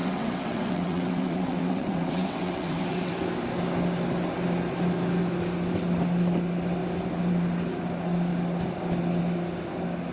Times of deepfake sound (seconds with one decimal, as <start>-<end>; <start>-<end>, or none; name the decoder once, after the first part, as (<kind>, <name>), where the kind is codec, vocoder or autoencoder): 0.0-3.1 (vocoder, WaveNeXt)